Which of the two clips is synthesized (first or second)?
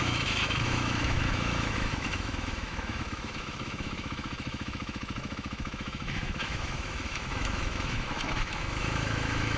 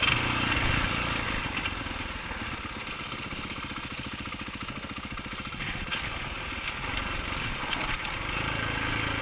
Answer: first